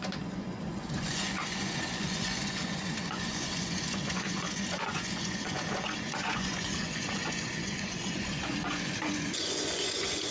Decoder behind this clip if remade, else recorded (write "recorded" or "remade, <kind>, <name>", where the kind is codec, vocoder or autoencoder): remade, vocoder, Vocos